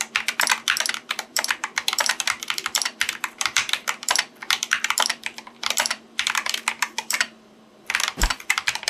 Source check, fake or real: fake